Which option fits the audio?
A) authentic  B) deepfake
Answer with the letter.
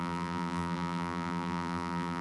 B